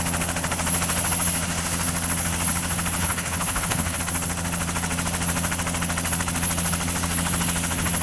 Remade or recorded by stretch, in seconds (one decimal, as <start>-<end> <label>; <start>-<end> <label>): 0.0-3.0 recorded; 3.0-4.0 remade; 4.0-8.0 recorded